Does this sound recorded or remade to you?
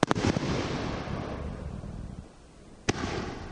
remade